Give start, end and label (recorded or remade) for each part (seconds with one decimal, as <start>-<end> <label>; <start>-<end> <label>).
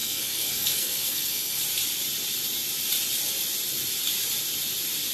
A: 0.0-1.6 remade; 1.6-5.1 recorded